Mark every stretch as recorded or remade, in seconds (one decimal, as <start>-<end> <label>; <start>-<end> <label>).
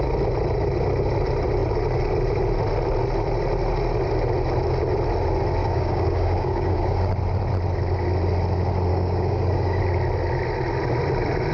0.0-5.6 recorded; 5.6-7.1 remade; 7.1-8.9 recorded; 8.9-9.8 remade; 9.8-11.5 recorded